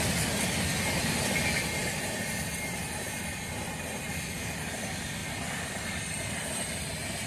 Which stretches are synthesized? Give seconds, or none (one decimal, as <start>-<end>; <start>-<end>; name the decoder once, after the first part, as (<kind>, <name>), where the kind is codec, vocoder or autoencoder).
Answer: 5.2-6.3 (vocoder, BigVGAN v2)